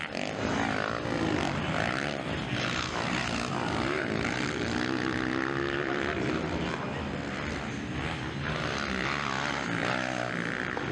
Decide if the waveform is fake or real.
real